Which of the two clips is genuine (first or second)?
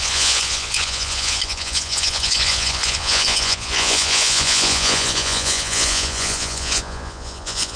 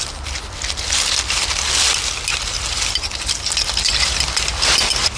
second